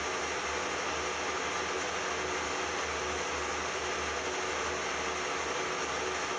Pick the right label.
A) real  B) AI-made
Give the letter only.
A